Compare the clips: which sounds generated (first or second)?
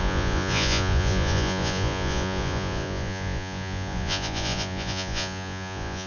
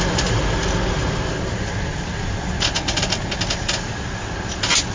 first